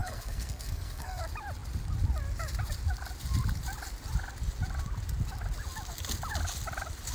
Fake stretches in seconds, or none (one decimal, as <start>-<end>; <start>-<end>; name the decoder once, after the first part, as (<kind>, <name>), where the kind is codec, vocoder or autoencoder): 0.0-1.2 (codec, SNAC)